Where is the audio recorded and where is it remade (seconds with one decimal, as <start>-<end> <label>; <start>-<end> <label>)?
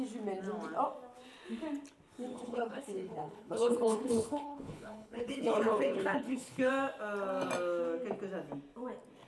0.0-2.3 recorded; 2.3-6.7 remade; 6.7-9.3 recorded